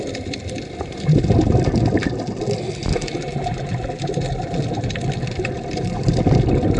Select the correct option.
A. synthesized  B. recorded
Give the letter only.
B